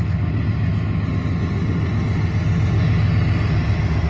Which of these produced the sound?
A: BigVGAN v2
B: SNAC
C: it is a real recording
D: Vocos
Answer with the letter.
C